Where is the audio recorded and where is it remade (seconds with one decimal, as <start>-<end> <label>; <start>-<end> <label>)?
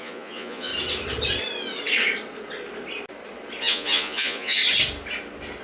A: 0.0-0.7 remade; 0.7-3.6 recorded; 3.6-4.6 remade; 4.6-5.6 recorded